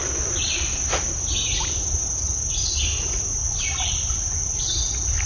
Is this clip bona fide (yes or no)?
yes